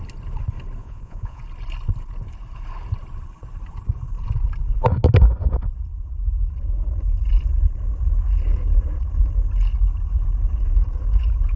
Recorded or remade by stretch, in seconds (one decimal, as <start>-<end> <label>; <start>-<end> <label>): 0.0-0.8 recorded; 0.8-1.4 remade; 1.4-11.6 recorded